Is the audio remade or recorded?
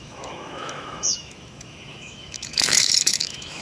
remade